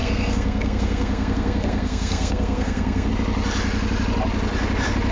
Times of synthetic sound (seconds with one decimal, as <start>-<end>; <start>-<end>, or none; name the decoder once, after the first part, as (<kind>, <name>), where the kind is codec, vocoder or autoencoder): 0.0-3.1 (codec, SNAC)